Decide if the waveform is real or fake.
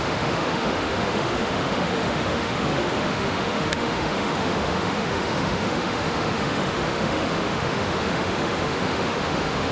fake